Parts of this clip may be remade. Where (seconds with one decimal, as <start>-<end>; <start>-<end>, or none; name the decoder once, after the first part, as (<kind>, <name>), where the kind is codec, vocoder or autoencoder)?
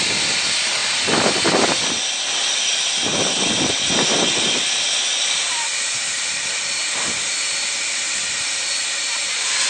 0.8-1.3 (vocoder, BigVGAN v2); 6.0-6.5